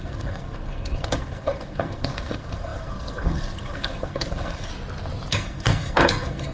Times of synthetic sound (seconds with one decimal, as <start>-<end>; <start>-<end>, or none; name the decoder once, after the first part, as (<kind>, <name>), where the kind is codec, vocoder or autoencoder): 0.0-4.7 (codec, SNAC); 5.3-6.5